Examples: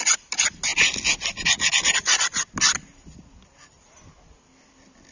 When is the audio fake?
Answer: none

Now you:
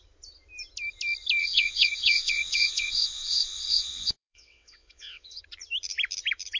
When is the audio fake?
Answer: 1.4-5.4 (vocoder, WaveNeXt)

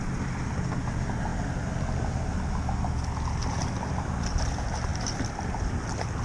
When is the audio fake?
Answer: 4.9-5.7 (vocoder, BigVGAN v2)